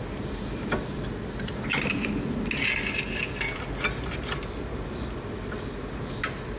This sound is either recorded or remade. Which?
recorded